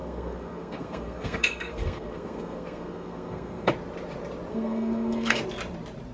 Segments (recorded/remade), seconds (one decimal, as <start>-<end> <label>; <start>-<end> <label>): 0.0-3.7 remade; 3.7-4.5 recorded; 4.5-5.4 remade; 5.4-6.1 recorded